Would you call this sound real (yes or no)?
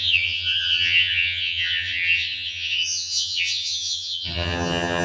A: no